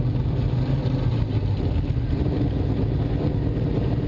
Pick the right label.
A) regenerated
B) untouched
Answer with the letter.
B